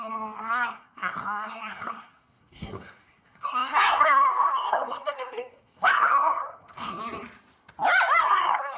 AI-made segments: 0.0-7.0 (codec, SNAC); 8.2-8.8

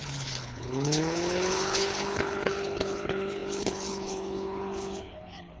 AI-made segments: 0.0-5.6 (codec, HILCodec)

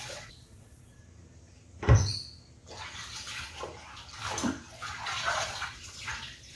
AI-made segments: 0.0-1.0 (vocoder, Vocos); 4.7-6.6

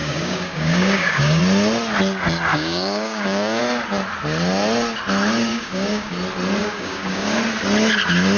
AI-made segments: 0.0-1.4 (codec, DAC); 2.5-3.6; 5.5-6.1; 6.6-7.4